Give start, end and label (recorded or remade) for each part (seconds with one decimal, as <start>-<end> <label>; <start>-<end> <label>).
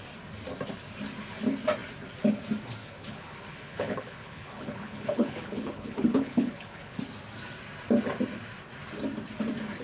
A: 0.0-2.8 recorded; 2.8-7.0 remade; 7.0-9.8 recorded